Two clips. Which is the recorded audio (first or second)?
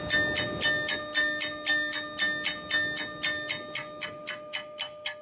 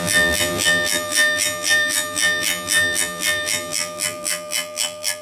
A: first